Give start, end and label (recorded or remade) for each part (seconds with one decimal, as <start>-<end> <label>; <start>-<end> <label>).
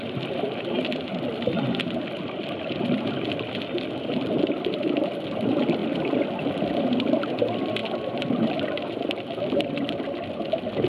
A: 0.0-10.9 recorded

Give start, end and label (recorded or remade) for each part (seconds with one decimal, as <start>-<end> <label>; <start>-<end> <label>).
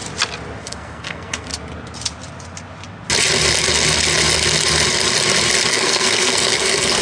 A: 0.0-0.6 recorded; 0.6-1.5 remade; 1.5-5.7 recorded; 5.7-7.0 remade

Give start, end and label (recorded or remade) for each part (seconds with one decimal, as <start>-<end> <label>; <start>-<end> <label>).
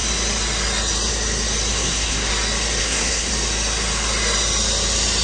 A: 0.0-1.7 recorded; 1.7-2.3 remade; 2.3-2.8 recorded; 2.8-3.3 remade; 3.3-5.2 recorded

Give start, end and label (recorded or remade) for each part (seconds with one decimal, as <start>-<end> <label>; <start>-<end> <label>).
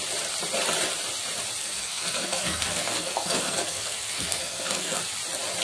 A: 0.0-1.6 recorded; 1.6-5.0 remade; 5.0-5.6 recorded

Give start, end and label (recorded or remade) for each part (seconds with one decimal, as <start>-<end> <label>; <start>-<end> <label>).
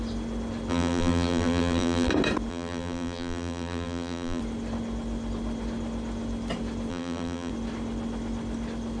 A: 0.0-0.7 recorded; 0.7-2.1 remade; 2.1-2.5 recorded; 2.5-4.4 remade; 4.4-6.9 recorded; 6.9-7.5 remade; 7.5-9.0 recorded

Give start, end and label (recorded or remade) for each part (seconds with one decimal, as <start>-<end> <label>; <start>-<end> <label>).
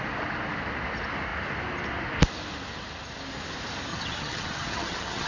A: 0.0-3.9 recorded; 3.9-5.3 remade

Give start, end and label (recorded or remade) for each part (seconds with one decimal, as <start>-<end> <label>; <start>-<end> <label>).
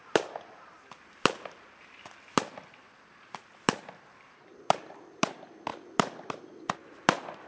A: 0.0-7.5 remade